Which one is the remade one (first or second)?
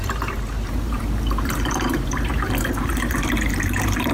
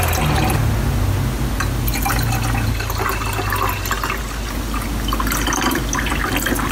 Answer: first